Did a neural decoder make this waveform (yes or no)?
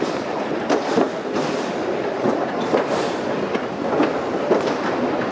no